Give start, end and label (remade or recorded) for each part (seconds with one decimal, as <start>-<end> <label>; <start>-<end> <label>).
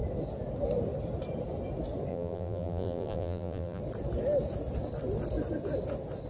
0.0-2.1 recorded; 2.1-3.8 remade; 3.8-6.3 recorded